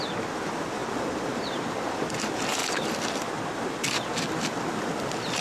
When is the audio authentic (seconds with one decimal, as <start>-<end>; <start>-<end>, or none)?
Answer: 0.0-5.4